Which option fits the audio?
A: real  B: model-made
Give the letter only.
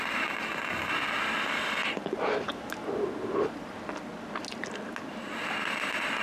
A